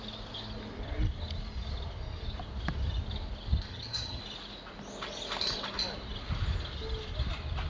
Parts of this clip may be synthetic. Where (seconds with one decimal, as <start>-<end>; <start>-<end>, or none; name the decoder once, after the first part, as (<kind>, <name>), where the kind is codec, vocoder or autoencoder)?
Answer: 3.7-4.2 (vocoder, HiFi-GAN)